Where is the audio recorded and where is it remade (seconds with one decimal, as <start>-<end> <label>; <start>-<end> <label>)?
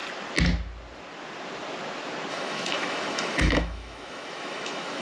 0.0-2.3 recorded; 2.3-5.0 remade